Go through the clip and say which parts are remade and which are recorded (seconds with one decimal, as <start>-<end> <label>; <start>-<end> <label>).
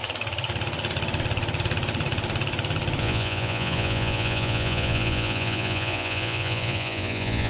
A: 0.0-3.0 recorded; 3.0-7.5 remade